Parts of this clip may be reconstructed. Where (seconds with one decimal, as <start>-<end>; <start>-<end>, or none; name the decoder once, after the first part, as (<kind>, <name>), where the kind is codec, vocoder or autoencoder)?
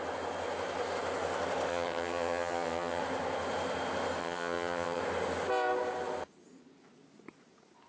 1.7-3.0 (vocoder, HiFi-GAN); 4.2-5.0